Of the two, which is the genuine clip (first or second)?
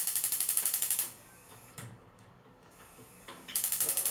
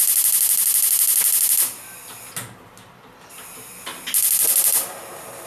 second